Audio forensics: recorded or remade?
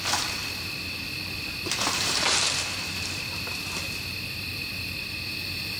recorded